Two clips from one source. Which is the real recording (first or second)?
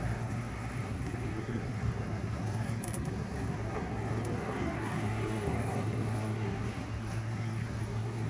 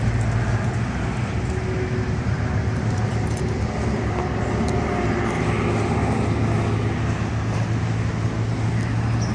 second